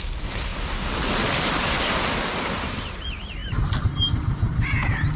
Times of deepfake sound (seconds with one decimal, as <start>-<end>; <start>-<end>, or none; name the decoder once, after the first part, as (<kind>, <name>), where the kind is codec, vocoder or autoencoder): none